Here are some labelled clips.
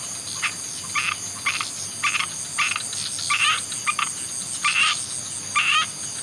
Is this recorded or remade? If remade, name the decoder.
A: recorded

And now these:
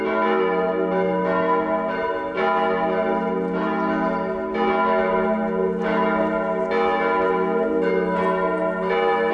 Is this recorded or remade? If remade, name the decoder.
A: recorded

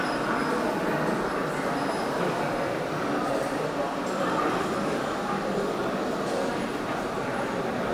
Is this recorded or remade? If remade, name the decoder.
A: remade, vocoder, BigVGAN v2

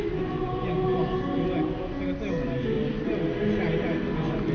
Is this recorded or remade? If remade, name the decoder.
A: recorded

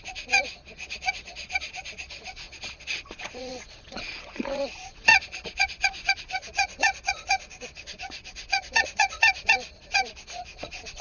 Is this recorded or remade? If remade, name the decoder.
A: remade, vocoder, Vocos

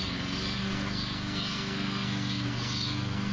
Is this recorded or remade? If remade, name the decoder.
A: remade, codec, SNAC